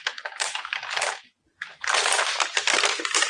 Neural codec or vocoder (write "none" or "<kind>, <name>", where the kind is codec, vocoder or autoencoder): none